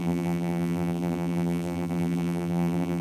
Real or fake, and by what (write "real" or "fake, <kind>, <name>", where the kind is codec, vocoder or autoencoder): fake, vocoder, BigVGAN v2